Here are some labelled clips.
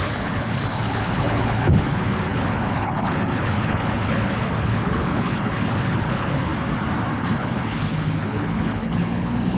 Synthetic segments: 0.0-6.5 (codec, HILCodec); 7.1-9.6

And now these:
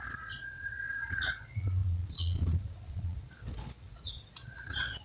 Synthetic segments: 0.0-5.0 (vocoder, Vocos)

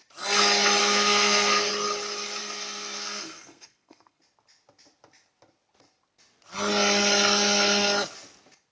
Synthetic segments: 0.8-1.7 (codec, SNAC); 2.4-4.2

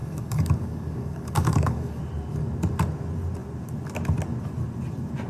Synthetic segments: 0.0-2.0 (codec, DAC)

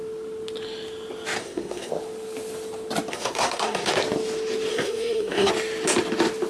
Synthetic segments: 1.4-1.9 (codec, SNAC); 3.1-3.9; 4.7-5.5

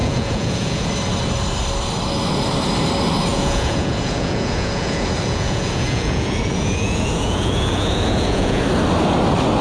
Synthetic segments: 0.0-0.9 (vocoder, Vocos); 3.3-8.6